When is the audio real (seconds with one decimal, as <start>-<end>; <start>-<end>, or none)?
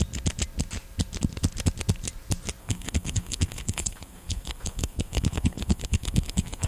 0.0-2.6